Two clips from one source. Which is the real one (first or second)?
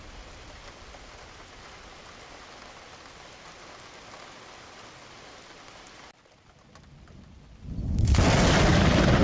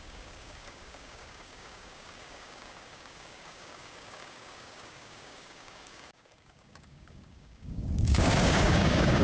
first